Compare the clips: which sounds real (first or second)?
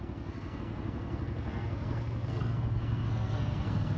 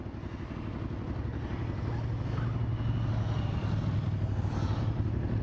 second